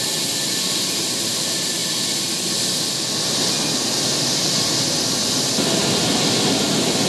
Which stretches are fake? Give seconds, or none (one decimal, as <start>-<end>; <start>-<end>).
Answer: none